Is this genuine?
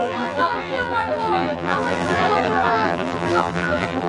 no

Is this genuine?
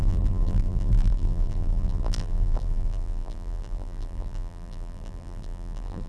no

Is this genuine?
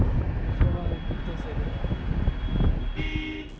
yes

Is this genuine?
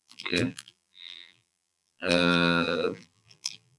no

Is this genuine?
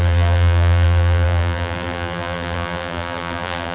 no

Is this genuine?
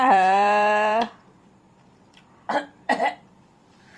no